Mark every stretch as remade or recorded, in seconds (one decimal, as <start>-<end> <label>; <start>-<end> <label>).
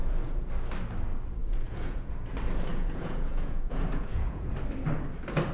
0.0-0.5 remade; 0.5-1.4 recorded; 1.4-2.1 remade; 2.1-2.7 recorded; 2.7-4.5 remade; 4.5-5.5 recorded